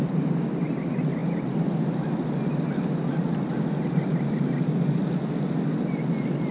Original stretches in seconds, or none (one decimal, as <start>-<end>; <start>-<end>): 0.0-6.5